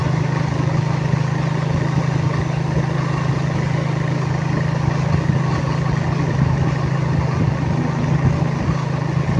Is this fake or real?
real